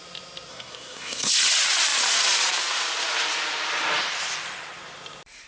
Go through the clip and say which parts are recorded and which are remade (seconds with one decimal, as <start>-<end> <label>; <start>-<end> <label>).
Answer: 0.0-0.5 recorded; 0.5-1.3 remade; 1.3-5.5 recorded